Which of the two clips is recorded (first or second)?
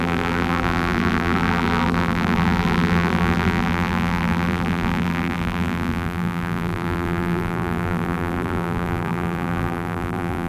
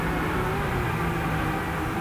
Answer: second